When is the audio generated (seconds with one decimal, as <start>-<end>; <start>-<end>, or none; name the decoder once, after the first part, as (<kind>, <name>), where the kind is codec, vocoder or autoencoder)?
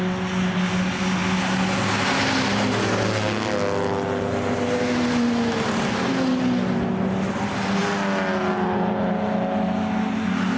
none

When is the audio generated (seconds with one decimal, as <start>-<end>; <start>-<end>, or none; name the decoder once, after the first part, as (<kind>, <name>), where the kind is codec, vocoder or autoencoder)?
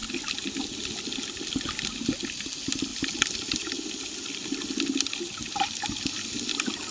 none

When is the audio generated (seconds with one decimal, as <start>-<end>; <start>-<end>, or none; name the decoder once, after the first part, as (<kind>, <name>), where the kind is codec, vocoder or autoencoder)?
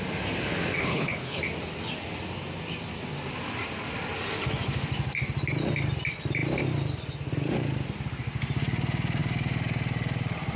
0.8-1.4 (codec, HILCodec)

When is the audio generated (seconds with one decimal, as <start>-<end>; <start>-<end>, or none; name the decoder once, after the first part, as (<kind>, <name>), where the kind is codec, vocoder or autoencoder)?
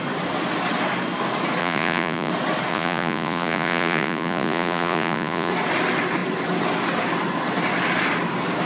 1.6-2.3 (vocoder, Vocos); 2.7-5.5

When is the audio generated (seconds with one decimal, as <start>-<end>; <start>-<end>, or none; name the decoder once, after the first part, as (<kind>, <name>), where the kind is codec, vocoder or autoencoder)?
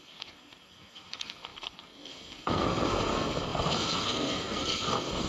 0.0-5.3 (codec, SNAC)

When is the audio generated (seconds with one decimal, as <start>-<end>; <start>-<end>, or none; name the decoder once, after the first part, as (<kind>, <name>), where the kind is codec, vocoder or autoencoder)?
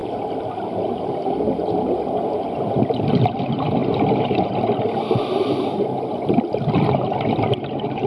3.8-6.4 (vocoder, BigVGAN v2)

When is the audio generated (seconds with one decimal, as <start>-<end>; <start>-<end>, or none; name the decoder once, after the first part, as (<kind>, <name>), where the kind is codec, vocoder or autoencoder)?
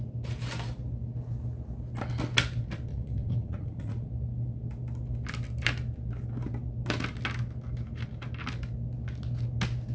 2.9-4.1 (vocoder, Vocos)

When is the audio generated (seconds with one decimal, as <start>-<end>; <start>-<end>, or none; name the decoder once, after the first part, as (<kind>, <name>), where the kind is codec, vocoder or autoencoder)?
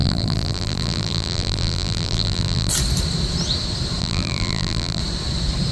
0.0-2.7 (vocoder, BigVGAN v2); 4.0-5.0